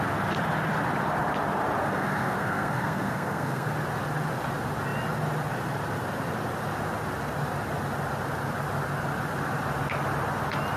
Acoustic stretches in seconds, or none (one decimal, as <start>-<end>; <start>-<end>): 0.0-1.8; 3.7-10.8